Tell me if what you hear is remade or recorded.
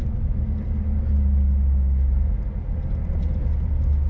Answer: recorded